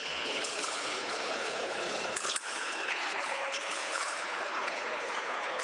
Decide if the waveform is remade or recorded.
remade